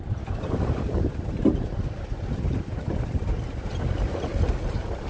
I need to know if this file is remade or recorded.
recorded